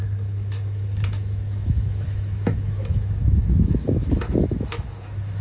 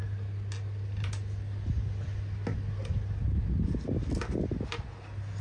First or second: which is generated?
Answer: first